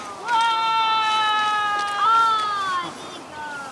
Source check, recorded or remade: recorded